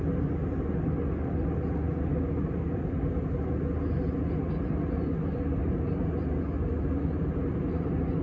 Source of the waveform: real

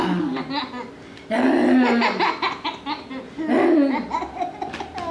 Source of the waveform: real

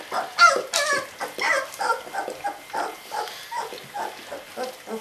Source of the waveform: real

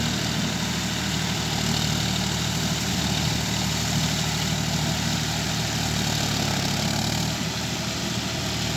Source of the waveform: real